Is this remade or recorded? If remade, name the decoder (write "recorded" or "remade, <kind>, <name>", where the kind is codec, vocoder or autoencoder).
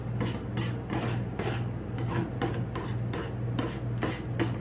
recorded